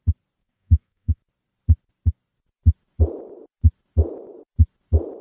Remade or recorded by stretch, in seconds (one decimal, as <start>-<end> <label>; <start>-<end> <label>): 0.0-0.4 recorded; 0.4-1.2 remade; 1.2-5.2 recorded